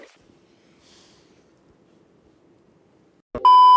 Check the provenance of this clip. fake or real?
real